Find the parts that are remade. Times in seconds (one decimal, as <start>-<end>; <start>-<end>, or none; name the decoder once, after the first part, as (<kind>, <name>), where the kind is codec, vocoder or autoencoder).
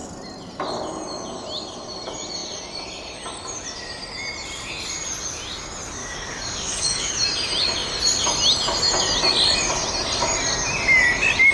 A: 6.0-7.1 (codec, DAC)